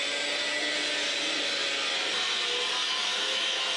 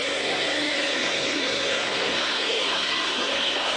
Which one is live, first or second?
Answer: first